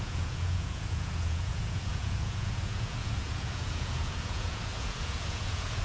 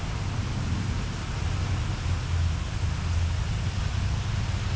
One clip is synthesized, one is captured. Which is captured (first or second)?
second